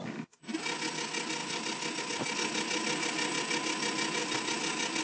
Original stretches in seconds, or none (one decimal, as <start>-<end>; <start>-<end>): 0.0-5.0